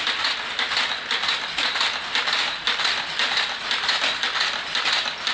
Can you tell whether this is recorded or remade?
recorded